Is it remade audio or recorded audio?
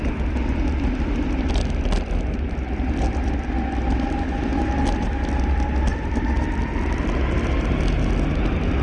recorded